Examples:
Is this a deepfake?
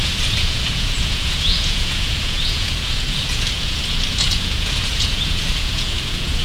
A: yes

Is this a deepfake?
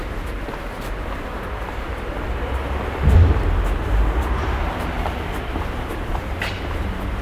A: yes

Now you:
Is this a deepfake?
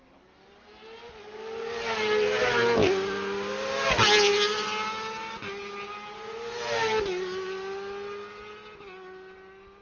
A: no